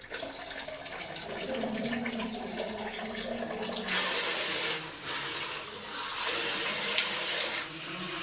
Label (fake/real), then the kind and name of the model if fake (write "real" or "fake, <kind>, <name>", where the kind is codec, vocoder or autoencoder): real